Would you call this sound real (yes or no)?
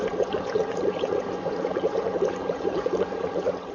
no